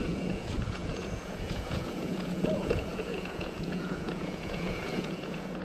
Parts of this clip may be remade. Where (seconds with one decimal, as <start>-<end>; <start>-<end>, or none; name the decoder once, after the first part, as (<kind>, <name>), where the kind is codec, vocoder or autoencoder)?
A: 0.0-5.6 (vocoder, Vocos)